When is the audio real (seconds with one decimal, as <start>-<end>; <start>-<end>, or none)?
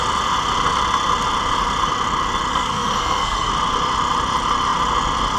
0.0-2.5; 3.5-5.4